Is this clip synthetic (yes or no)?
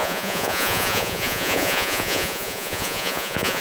yes